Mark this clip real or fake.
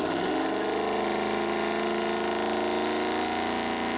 real